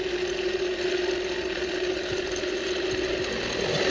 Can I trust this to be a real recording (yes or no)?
yes